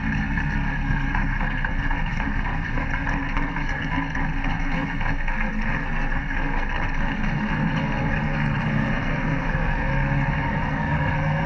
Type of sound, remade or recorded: remade